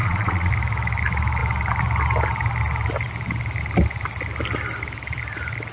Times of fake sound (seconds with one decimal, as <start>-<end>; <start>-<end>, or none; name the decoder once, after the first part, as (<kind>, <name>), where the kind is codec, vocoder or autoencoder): 0.0-0.5 (vocoder, Vocos)

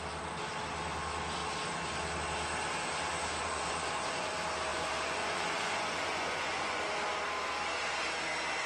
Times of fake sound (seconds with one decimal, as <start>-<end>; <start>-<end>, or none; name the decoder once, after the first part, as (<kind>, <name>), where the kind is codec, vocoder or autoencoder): 3.4-4.3 (vocoder, Vocos); 4.7-6.8